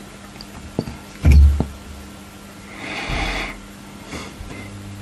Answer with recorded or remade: recorded